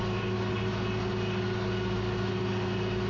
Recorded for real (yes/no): yes